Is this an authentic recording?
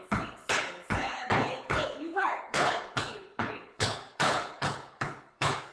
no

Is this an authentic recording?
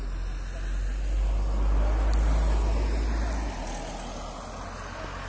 yes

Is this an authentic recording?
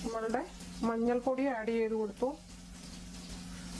yes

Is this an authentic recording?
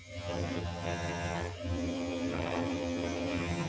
no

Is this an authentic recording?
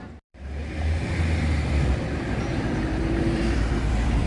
no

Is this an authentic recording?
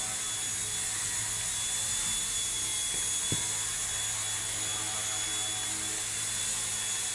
yes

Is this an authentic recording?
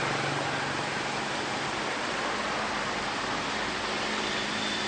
yes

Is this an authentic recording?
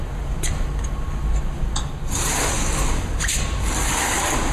yes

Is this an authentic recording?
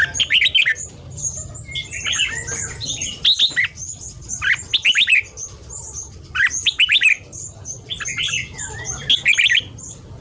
yes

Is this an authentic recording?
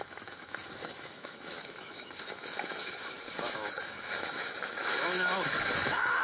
no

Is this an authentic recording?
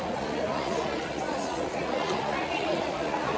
no